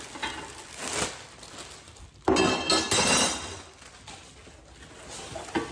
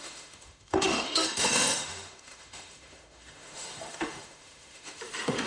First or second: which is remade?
second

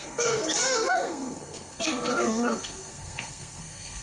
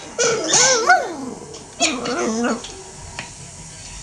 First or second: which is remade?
first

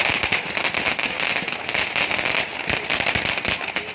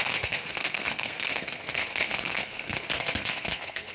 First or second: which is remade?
second